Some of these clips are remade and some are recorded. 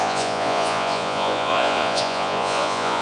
remade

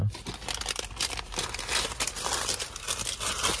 recorded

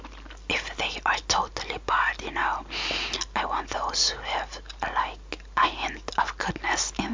recorded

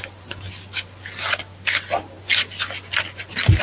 recorded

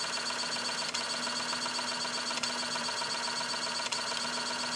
recorded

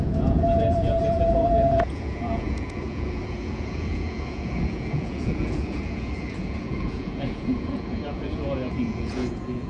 remade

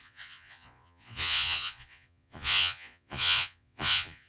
remade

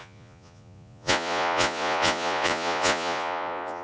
remade